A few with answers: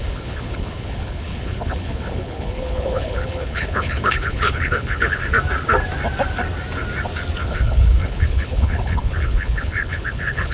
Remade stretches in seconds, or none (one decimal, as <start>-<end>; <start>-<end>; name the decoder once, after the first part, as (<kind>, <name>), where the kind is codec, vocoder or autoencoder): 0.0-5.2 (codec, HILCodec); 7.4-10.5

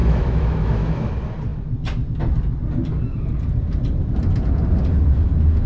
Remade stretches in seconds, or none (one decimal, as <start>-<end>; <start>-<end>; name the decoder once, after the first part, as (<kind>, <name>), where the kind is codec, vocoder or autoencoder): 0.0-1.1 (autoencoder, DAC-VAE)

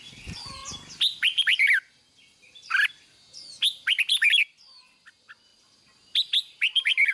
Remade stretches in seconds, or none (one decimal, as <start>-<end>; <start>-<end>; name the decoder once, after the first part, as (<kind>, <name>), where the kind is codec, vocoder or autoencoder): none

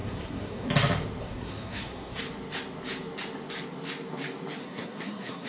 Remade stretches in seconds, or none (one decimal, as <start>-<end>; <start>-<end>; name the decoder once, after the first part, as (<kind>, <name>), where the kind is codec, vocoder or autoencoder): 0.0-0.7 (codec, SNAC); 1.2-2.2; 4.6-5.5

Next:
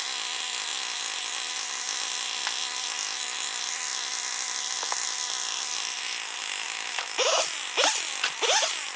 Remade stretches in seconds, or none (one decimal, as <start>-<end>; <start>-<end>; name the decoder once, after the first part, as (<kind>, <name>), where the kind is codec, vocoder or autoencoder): 6.4-7.4 (autoencoder, DAC-VAE)